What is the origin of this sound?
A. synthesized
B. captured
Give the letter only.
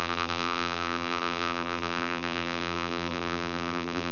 A